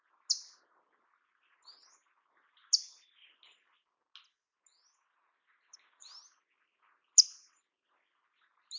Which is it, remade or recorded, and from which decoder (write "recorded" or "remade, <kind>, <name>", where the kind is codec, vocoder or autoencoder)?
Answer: recorded